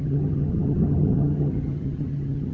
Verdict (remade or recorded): remade